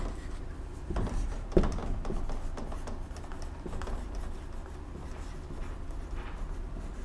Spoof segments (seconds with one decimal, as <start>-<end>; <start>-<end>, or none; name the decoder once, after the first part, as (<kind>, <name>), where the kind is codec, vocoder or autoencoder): none

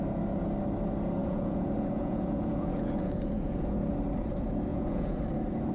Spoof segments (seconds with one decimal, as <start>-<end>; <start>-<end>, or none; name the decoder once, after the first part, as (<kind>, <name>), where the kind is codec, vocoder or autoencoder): 1.2-3.9 (vocoder, Vocos); 4.7-5.2

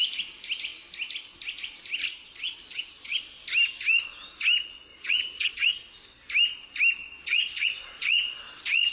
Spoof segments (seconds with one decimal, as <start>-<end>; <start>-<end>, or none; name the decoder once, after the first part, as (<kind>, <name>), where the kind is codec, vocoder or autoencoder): 2.1-3.2 (vocoder, Vocos); 4.9-5.7; 7.0-8.9

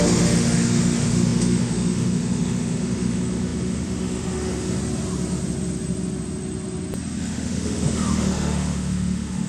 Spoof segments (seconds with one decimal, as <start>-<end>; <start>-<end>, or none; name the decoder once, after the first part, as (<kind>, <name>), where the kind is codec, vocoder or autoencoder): 0.0-4.8 (autoencoder, DAC-VAE); 7.2-9.5